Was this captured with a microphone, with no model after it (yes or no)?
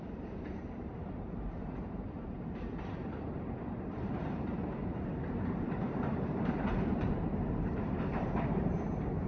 no